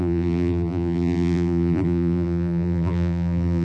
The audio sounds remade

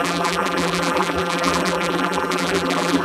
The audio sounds remade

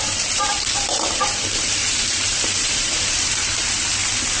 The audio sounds remade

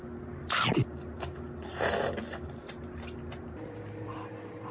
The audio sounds recorded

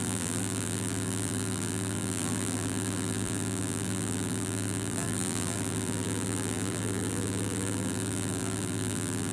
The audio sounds remade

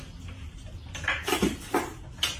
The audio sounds recorded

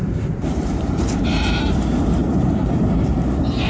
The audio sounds remade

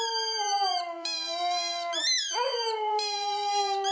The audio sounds remade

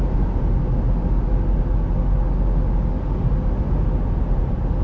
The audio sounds recorded